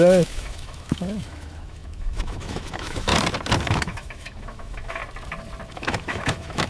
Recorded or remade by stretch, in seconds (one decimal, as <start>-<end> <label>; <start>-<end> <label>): 0.0-3.1 remade; 3.1-3.6 recorded; 3.6-5.0 remade; 5.0-5.7 recorded; 5.7-6.7 remade